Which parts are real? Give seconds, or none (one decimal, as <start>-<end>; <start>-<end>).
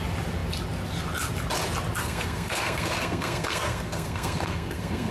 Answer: 0.0-2.0